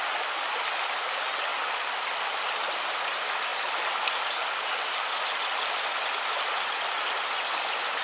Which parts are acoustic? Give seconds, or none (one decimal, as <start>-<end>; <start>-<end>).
0.0-8.0